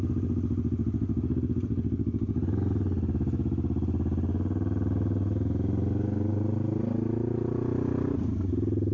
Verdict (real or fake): real